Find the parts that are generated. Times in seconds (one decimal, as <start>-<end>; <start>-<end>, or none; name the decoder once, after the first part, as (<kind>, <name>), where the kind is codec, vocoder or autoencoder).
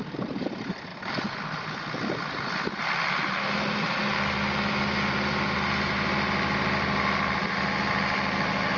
none